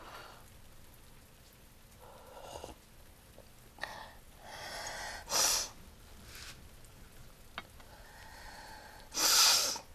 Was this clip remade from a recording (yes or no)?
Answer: no